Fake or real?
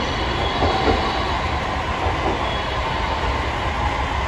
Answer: real